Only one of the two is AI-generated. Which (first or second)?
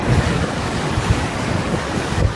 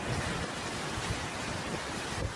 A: first